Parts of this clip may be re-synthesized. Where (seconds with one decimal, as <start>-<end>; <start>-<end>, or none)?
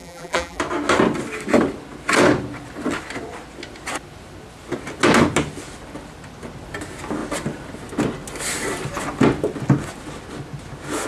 0.0-0.6